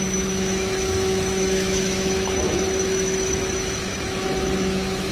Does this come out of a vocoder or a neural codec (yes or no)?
yes